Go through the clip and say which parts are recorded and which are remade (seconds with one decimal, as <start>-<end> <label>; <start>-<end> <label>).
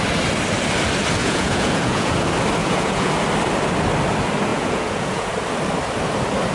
0.0-1.2 recorded; 1.2-2.1 remade; 2.1-2.6 recorded; 2.6-3.1 remade; 3.1-4.5 recorded; 4.5-5.3 remade; 5.3-6.5 recorded